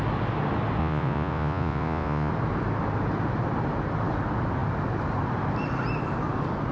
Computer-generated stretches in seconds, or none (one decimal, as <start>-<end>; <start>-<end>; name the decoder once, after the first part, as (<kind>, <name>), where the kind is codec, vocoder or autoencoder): 0.8-2.3 (vocoder, Vocos)